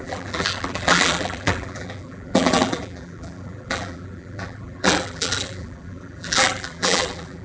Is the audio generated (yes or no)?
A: yes